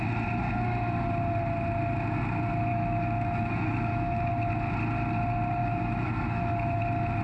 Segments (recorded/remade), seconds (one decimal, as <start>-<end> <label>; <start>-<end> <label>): 0.0-2.7 recorded; 2.7-4.3 remade; 4.3-5.6 recorded; 5.6-6.8 remade; 6.8-7.2 recorded